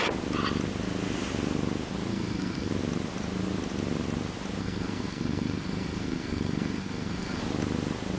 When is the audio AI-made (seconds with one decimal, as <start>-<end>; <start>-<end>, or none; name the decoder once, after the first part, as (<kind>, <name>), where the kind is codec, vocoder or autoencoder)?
2.1-2.7 (codec, SNAC); 4.6-7.4